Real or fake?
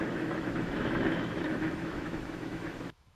fake